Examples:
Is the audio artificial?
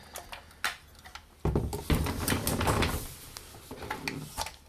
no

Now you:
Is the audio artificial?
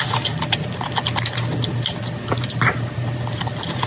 no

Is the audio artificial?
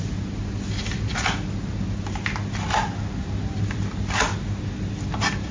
no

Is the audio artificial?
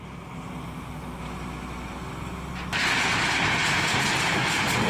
no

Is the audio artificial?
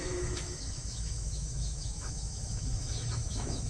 yes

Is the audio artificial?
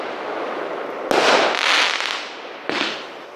no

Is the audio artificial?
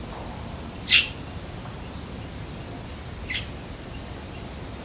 no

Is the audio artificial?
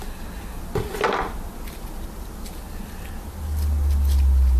no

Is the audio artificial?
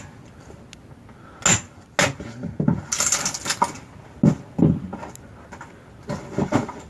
no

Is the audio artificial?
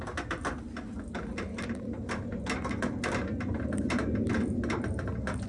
no